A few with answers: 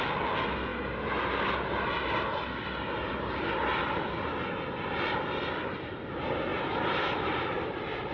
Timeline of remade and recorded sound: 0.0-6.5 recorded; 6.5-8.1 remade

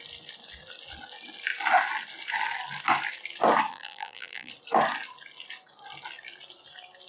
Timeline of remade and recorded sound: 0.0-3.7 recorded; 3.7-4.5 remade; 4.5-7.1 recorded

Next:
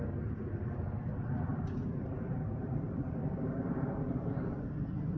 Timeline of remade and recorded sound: 0.0-1.5 recorded; 1.5-4.6 remade; 4.6-5.2 recorded

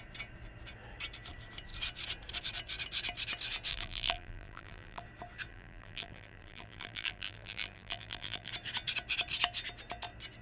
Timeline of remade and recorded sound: 0.0-3.7 recorded; 3.7-5.0 remade; 5.0-5.5 recorded; 5.5-8.5 remade; 8.5-10.4 recorded